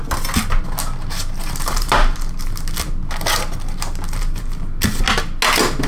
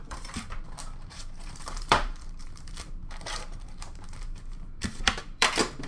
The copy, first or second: second